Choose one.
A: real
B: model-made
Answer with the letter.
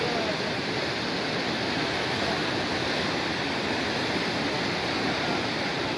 A